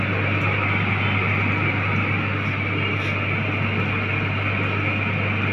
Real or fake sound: real